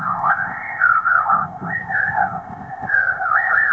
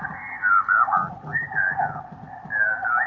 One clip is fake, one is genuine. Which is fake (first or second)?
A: first